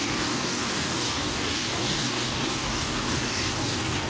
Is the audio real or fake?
fake